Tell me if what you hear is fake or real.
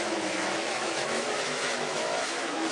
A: fake